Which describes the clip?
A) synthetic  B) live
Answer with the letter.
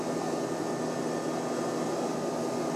B